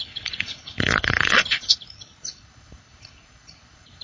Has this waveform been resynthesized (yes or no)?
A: yes